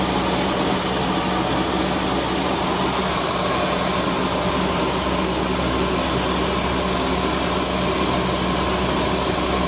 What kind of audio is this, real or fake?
real